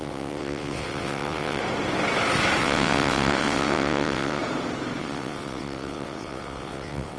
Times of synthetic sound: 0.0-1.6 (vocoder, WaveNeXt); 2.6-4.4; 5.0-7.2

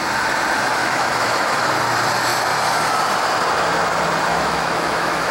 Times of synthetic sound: 0.8-1.7 (autoencoder, DAC-VAE); 4.3-5.3

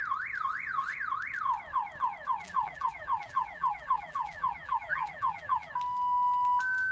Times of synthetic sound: 2.4-5.7 (vocoder, BigVGAN v2)

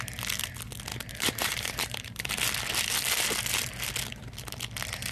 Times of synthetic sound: 0.9-2.3 (vocoder, BigVGAN v2)

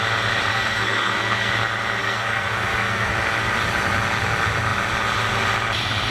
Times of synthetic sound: 0.5-1.5 (codec, SNAC); 2.0-3.1